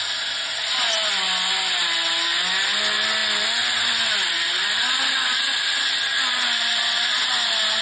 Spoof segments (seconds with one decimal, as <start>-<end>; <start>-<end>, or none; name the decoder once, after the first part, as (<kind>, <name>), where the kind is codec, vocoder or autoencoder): none